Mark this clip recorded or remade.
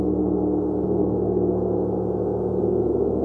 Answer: recorded